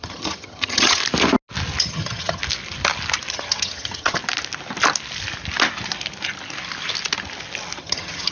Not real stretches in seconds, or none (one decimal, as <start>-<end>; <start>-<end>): 0.0-1.0; 1.8-2.4; 3.3-4.2; 7.8-8.3

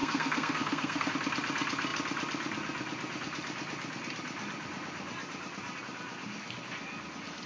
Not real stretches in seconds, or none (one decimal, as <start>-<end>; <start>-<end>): 0.0-1.1